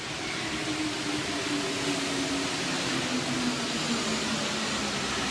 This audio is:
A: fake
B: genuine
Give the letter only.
B